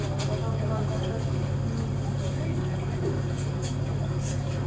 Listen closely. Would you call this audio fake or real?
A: real